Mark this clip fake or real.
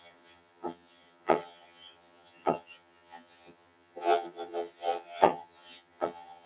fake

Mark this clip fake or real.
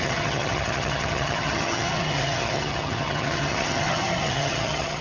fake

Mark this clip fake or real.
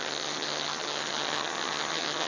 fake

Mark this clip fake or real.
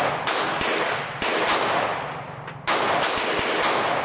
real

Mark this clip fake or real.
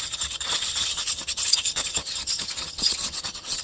fake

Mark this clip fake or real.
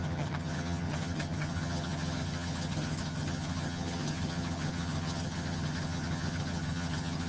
fake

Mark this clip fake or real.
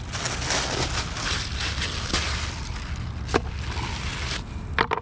real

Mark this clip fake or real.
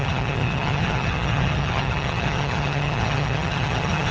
fake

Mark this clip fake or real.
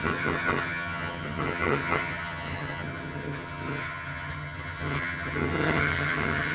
fake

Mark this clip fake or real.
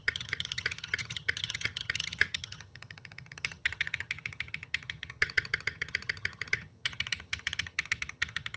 fake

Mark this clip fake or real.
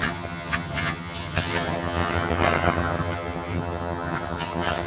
fake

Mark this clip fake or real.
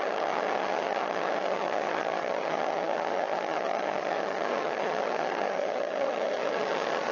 fake